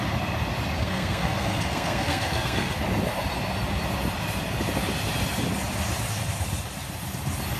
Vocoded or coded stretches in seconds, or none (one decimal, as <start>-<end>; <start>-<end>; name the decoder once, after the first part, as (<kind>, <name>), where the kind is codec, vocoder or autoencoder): 0.8-2.8 (codec, SNAC)